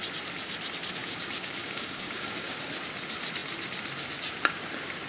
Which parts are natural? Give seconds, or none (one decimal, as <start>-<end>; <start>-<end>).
0.0-1.0; 2.7-5.1